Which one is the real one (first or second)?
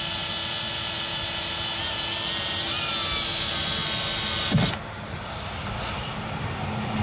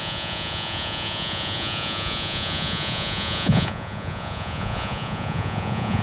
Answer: first